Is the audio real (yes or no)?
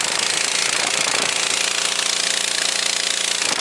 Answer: yes